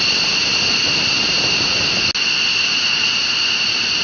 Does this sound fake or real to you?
real